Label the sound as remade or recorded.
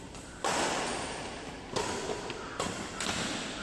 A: recorded